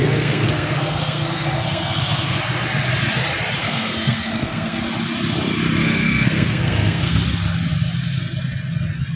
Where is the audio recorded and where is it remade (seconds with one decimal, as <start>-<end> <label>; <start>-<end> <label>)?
0.0-2.4 remade; 2.4-3.6 recorded; 3.6-4.8 remade; 4.8-5.8 recorded; 5.8-7.2 remade; 7.2-9.2 recorded